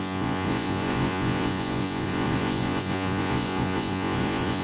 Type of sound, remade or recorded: remade